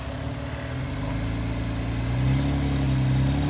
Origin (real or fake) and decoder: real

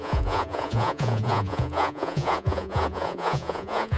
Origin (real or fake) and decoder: fake, vocoder, Vocos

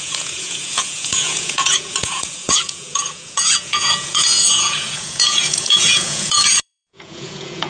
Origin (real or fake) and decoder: fake, vocoder, Vocos